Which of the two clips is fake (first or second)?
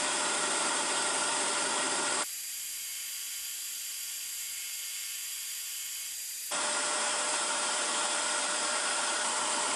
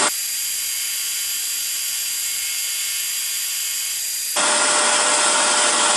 first